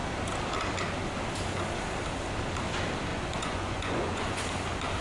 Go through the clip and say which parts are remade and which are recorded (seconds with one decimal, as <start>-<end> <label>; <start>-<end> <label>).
0.0-3.1 recorded; 3.1-4.4 remade; 4.4-5.0 recorded